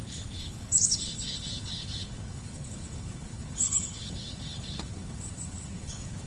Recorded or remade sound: remade